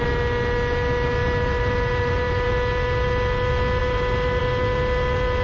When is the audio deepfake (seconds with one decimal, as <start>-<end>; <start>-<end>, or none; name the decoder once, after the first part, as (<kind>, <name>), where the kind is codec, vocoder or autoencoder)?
1.2-2.5 (vocoder, BigVGAN v2); 3.8-4.4